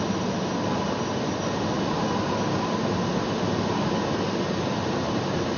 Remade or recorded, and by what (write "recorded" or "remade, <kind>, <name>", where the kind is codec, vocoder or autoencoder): recorded